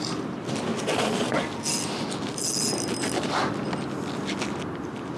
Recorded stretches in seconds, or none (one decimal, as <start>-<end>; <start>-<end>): 0.0-5.2